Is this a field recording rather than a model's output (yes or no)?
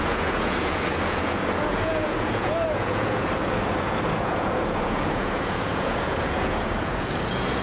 no